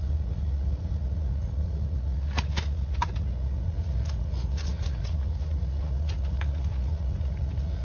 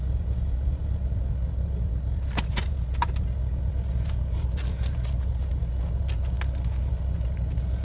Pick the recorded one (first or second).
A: second